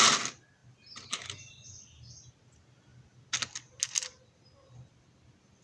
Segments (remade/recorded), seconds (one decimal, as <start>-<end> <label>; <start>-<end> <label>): 0.0-5.6 recorded